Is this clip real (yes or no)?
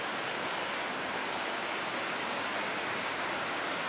no